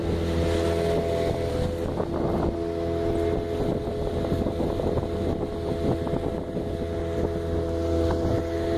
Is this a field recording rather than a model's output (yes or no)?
yes